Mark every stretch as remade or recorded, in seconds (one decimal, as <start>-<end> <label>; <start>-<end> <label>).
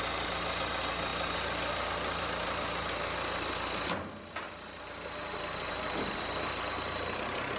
0.0-7.6 recorded